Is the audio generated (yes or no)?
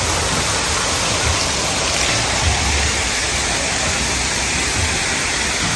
no